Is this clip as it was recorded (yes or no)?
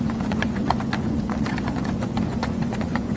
no